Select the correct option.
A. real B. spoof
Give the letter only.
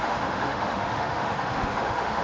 B